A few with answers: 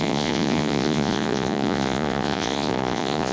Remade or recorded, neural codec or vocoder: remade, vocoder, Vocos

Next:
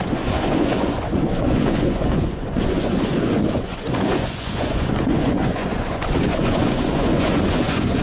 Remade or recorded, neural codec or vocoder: remade, vocoder, Vocos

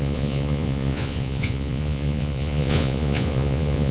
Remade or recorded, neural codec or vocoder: remade, vocoder, Vocos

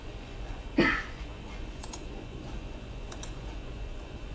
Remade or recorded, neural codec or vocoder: remade, vocoder, Vocos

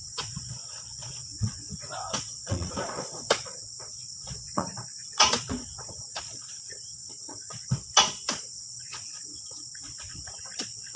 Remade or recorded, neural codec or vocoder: remade, vocoder, Vocos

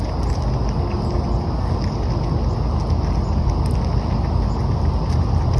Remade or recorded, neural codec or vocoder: recorded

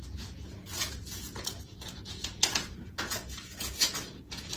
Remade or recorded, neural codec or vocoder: remade, vocoder, Vocos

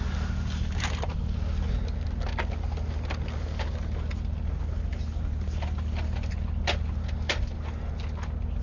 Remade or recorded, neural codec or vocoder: recorded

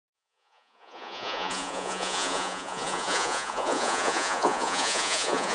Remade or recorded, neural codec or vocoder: remade, vocoder, Vocos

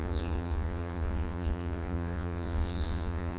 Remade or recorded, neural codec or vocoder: remade, vocoder, Vocos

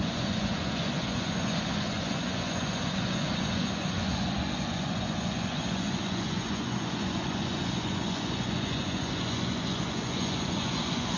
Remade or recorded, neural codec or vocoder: remade, vocoder, Vocos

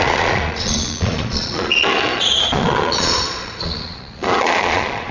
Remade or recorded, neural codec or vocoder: remade, vocoder, Vocos